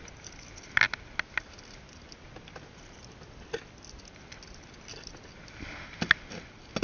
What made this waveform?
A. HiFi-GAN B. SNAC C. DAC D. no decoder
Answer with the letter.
D